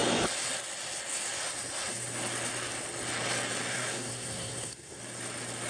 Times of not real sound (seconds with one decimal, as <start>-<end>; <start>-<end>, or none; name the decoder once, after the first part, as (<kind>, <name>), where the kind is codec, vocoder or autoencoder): 3.7-5.0 (codec, SNAC)